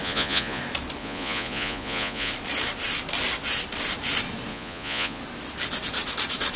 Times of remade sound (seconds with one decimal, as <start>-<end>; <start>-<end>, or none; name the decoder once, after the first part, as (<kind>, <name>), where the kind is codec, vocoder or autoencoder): 0.0-0.6 (vocoder, Vocos); 1.0-2.3; 4.5-5.2